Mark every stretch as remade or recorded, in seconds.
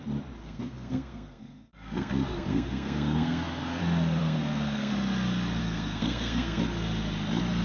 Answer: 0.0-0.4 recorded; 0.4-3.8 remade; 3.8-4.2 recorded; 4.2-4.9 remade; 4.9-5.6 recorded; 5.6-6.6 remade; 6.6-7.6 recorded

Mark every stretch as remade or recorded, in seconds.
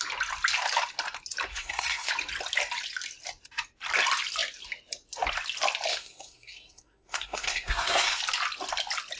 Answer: 0.0-1.5 recorded; 1.5-2.1 remade; 2.1-5.9 recorded; 5.9-8.2 remade; 8.2-9.2 recorded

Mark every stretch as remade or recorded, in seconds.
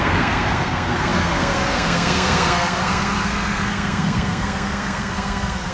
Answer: 0.0-5.7 remade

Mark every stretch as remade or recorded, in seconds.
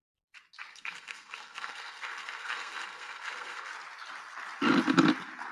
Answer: 0.0-0.7 recorded; 0.7-3.7 remade; 3.7-5.5 recorded